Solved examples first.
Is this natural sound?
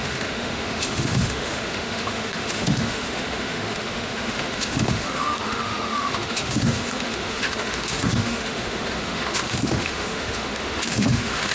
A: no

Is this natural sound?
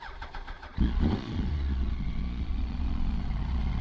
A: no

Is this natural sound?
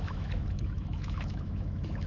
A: no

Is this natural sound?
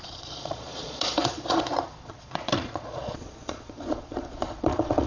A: no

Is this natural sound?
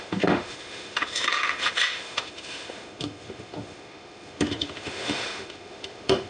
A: no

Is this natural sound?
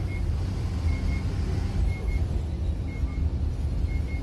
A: yes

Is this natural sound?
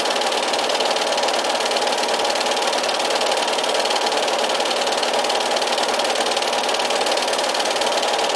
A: yes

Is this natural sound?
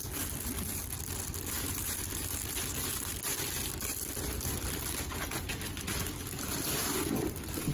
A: yes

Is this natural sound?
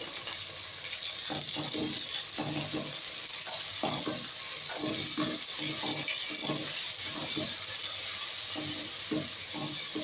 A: yes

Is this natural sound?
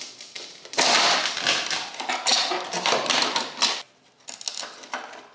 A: yes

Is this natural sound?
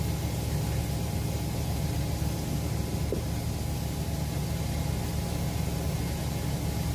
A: yes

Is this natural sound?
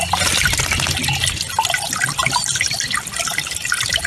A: yes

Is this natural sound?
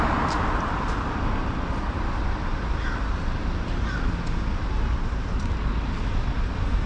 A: yes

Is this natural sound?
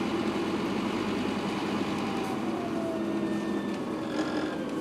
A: yes